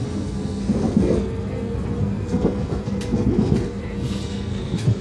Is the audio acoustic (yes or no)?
no